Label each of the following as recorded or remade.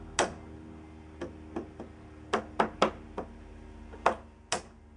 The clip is recorded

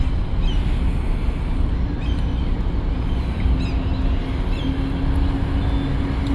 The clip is recorded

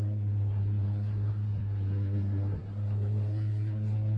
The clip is remade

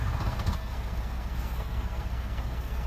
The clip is remade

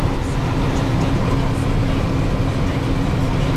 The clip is recorded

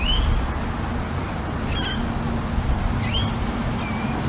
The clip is recorded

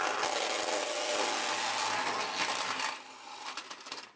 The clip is recorded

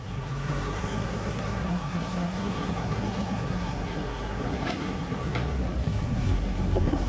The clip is remade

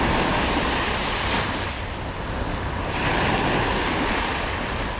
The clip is recorded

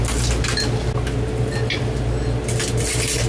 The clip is recorded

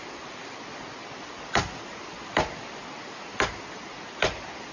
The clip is recorded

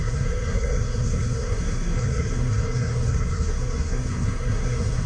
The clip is remade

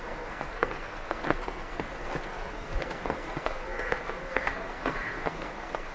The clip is remade